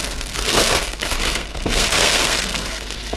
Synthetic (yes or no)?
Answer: yes